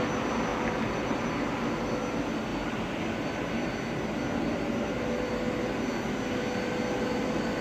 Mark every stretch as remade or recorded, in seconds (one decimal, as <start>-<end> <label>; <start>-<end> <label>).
0.0-7.6 recorded